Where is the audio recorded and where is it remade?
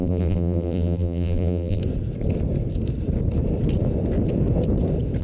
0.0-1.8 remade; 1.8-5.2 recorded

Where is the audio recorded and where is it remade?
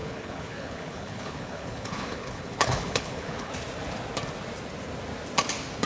0.0-3.5 remade; 3.5-5.9 recorded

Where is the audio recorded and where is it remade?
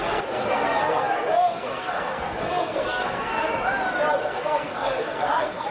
0.0-3.5 remade; 3.5-4.2 recorded; 4.2-5.7 remade